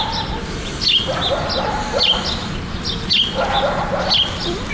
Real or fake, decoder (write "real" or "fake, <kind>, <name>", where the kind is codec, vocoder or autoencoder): real